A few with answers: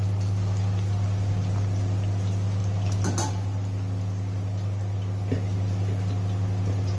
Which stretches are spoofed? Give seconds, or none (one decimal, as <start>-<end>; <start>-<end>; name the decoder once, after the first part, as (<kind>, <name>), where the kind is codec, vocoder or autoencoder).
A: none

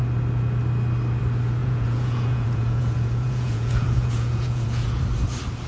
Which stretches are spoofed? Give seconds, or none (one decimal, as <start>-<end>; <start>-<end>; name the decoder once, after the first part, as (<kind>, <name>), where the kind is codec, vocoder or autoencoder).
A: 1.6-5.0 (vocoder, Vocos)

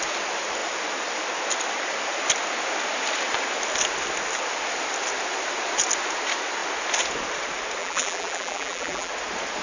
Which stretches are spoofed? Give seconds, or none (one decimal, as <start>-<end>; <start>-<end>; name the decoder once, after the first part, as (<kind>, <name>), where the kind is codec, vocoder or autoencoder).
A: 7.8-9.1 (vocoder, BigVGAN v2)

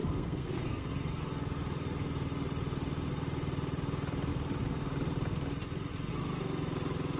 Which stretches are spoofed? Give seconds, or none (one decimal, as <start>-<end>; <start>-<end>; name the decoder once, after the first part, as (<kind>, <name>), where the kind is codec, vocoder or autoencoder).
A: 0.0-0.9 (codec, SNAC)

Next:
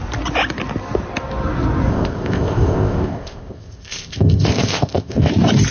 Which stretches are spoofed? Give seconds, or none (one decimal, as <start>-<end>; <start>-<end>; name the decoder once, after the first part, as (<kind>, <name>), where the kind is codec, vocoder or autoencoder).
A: 1.9-5.3 (codec, ZipCodec)

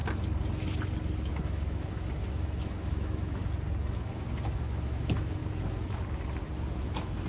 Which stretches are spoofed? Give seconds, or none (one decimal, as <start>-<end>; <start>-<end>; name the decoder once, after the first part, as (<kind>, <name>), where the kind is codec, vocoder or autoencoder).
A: 1.3-3.4 (autoencoder, DAC-VAE); 3.9-5.4; 6.8-7.3